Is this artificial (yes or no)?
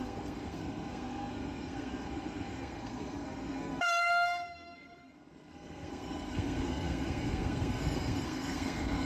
yes